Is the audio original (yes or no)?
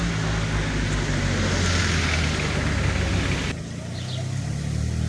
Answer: yes